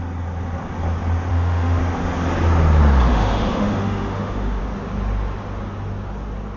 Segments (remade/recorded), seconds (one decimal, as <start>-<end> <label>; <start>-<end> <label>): 0.0-1.3 recorded; 1.3-1.8 remade; 1.8-3.1 recorded; 3.1-4.6 remade; 4.6-6.6 recorded